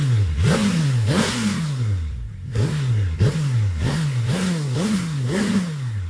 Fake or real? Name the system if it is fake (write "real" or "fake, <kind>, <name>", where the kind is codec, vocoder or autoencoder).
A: fake, codec, SNAC